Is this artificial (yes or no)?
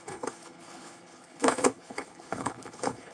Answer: yes